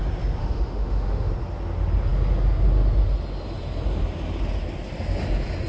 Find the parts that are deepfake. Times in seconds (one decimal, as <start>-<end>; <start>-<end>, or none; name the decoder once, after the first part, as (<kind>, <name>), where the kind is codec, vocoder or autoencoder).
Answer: 0.4-1.3 (autoencoder, DAC-VAE)